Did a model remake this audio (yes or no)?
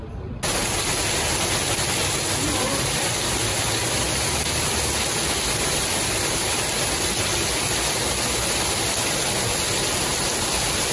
no